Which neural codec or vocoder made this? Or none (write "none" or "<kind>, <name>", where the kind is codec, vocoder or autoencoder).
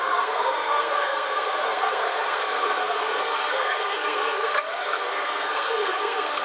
codec, SNAC